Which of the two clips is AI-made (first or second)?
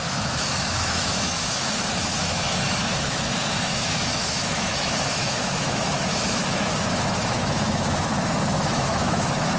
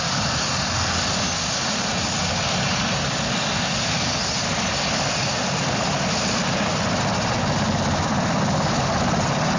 first